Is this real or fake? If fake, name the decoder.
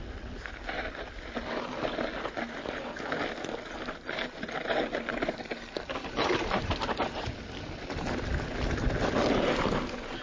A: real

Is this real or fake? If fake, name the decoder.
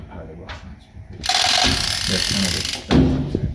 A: real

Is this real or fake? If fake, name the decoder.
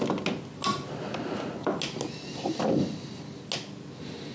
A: real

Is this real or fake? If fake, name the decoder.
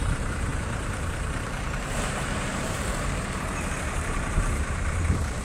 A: fake, vocoder, BigVGAN v2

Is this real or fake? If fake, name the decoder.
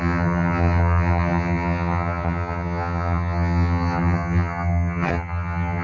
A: fake, vocoder, HiFi-GAN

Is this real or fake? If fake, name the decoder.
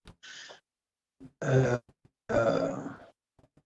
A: real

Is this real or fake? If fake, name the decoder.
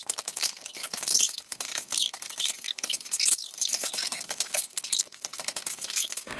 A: fake, codec, SNAC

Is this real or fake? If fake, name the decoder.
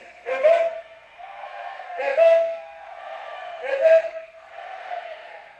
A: fake, codec, SNAC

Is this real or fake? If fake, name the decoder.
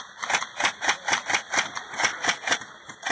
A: real